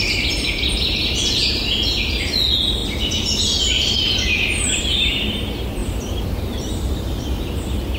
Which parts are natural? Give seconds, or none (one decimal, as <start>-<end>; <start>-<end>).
0.0-5.8; 7.2-8.0

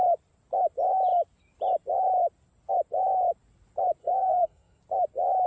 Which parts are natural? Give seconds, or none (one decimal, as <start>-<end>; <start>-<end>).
0.0-4.0; 4.8-5.5

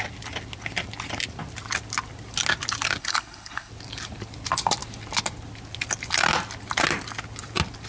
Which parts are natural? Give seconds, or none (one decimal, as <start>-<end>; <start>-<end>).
0.0-3.0; 3.7-7.9

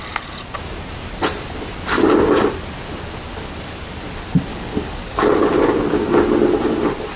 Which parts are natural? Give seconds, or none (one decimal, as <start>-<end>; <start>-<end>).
0.0-4.5; 5.2-7.2

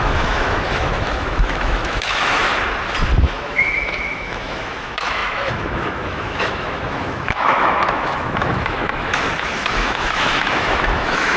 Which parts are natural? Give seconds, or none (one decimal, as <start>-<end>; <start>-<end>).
2.5-3.2

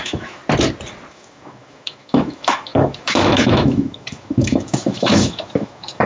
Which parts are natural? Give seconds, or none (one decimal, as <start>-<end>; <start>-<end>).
0.4-1.1